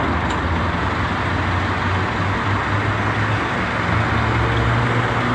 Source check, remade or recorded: recorded